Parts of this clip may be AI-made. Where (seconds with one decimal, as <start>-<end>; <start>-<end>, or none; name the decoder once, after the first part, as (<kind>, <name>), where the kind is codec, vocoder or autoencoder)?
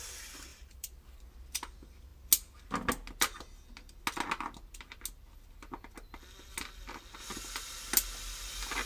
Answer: 0.5-1.3 (vocoder, BigVGAN v2)